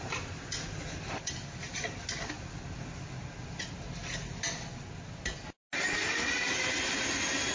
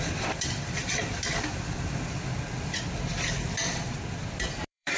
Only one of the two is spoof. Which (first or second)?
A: second